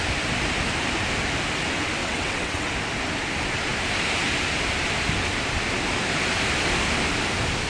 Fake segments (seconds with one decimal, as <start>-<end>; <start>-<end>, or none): 2.0-2.7